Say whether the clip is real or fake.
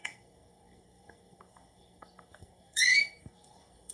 fake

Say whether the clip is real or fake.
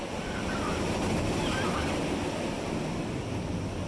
real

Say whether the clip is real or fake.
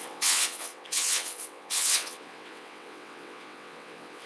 fake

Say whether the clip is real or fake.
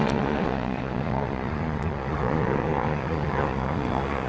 fake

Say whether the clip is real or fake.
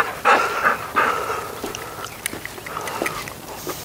real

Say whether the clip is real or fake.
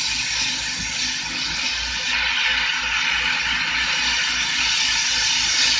real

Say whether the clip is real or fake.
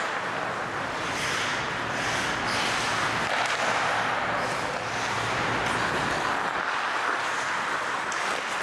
real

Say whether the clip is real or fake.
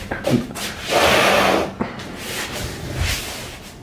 real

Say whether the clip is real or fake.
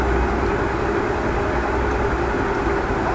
real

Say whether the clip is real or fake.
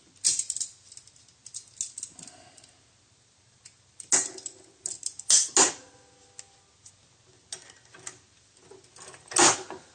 real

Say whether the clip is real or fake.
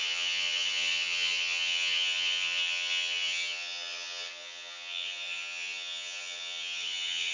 fake